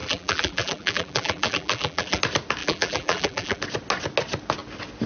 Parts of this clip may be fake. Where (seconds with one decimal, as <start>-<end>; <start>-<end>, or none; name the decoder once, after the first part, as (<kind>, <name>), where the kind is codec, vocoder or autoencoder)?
0.0-2.2 (vocoder, BigVGAN v2); 2.6-3.6